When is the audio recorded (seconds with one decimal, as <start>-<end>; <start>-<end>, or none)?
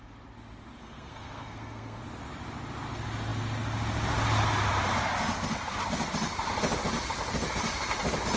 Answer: 0.0-0.8; 2.0-8.4